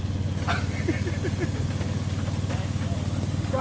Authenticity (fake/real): real